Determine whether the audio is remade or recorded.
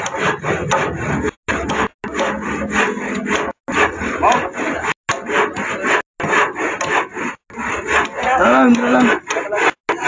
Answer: recorded